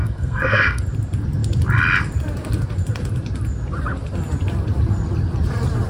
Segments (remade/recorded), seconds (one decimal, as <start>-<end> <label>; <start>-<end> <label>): 0.0-0.8 remade; 0.8-5.9 recorded

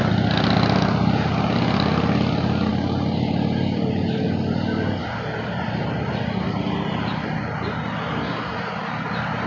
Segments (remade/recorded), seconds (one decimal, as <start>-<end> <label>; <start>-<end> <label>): 0.0-9.5 recorded